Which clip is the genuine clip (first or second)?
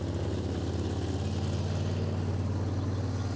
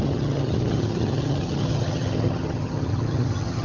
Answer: first